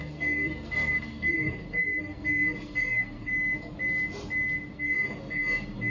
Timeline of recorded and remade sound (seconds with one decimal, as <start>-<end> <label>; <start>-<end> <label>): 0.0-3.3 remade; 3.3-4.7 recorded; 4.7-5.9 remade